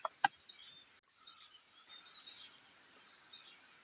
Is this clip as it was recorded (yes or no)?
yes